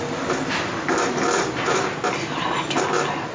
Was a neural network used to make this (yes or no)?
no